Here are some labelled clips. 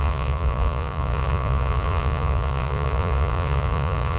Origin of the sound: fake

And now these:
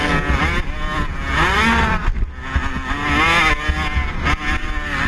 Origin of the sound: real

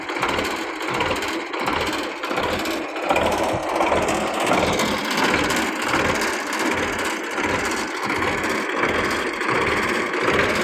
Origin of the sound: real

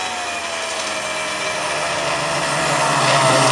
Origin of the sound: real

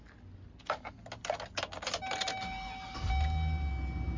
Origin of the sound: real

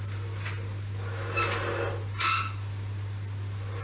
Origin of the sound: real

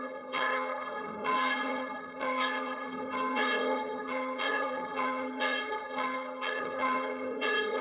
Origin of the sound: fake